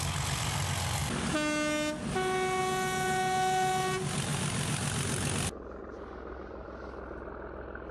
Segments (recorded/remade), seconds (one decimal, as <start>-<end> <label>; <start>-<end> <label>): 0.0-7.9 recorded